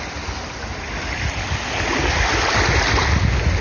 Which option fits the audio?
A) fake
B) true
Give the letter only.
B